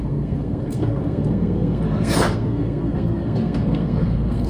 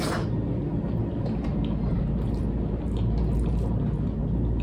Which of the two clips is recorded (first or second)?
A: second